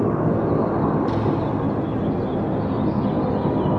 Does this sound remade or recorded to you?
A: recorded